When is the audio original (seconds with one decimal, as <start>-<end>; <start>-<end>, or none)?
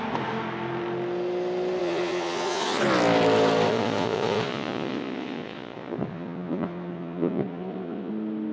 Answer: 0.0-1.8; 2.8-3.7; 8.1-8.5